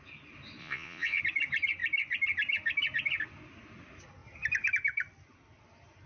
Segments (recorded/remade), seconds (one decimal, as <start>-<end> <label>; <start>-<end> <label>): 0.0-0.6 recorded; 0.6-1.2 remade; 1.2-6.1 recorded